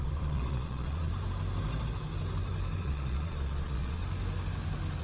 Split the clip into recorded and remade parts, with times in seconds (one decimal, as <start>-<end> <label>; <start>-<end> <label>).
0.0-1.1 remade; 1.1-2.8 recorded; 2.8-4.0 remade; 4.0-5.0 recorded